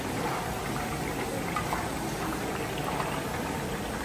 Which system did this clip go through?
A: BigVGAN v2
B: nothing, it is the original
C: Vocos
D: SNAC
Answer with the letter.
B